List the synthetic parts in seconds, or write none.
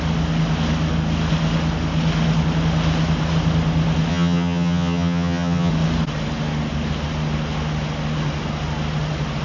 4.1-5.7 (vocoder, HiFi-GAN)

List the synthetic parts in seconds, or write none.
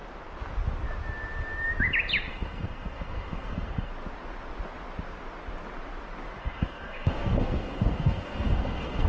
2.3-3.9 (codec, SNAC); 6.4-9.1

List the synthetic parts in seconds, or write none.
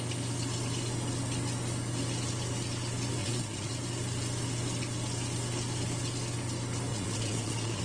3.2-3.7 (vocoder, Vocos); 6.9-7.8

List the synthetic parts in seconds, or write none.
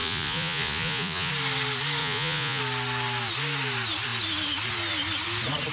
0.0-1.3 (vocoder, Vocos); 2.0-2.6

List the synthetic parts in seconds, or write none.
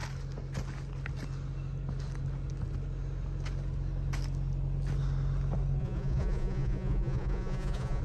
5.8-8.0 (vocoder, Vocos)